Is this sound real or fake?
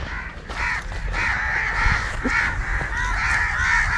real